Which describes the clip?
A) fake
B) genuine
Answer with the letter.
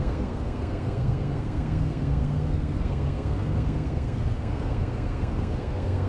A